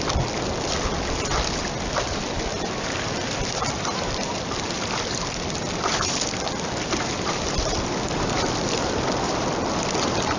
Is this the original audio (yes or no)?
no